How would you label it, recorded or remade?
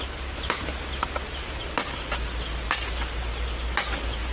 recorded